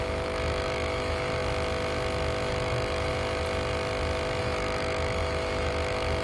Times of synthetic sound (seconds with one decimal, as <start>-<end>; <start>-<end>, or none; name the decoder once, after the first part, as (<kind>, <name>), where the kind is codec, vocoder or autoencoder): 0.0-1.4 (autoencoder, DAC-VAE); 2.5-3.1; 4.4-6.2